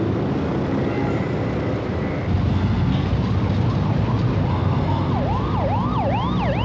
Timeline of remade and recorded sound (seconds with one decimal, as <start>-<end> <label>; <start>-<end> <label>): 0.0-2.5 recorded; 2.5-3.1 remade; 3.1-4.5 recorded; 4.5-5.1 remade; 5.1-6.6 recorded